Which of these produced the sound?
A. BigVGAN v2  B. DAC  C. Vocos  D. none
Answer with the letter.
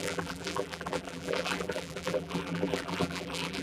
A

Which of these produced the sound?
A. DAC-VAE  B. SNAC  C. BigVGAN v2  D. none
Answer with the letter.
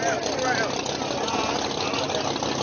D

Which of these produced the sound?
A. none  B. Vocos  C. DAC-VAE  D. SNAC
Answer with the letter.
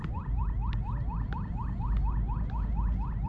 A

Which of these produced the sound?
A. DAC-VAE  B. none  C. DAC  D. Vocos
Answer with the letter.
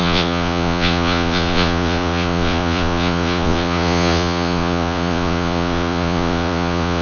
D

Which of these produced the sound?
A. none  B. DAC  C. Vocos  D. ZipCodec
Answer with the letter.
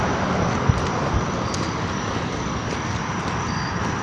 A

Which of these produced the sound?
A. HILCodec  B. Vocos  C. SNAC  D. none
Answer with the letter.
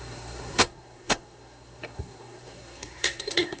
C